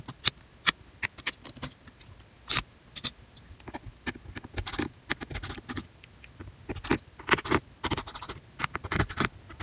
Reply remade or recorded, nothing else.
recorded